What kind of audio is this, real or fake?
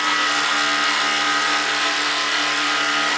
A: real